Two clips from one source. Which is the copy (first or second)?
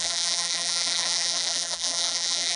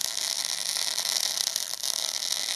first